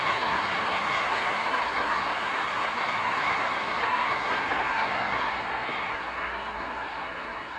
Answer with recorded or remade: remade